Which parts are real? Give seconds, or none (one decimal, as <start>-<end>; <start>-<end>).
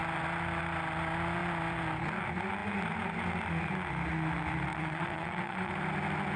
0.0-4.7; 5.7-6.4